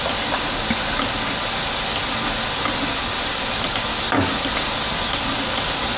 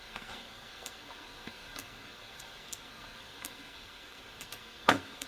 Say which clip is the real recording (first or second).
first